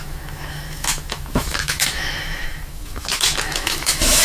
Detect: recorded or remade remade